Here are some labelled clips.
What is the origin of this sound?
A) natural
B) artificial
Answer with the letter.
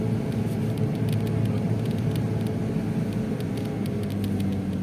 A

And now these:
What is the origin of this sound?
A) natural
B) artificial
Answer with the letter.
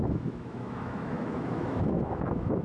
B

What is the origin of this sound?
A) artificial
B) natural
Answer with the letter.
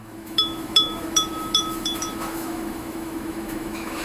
A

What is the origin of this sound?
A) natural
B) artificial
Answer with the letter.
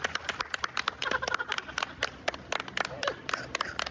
A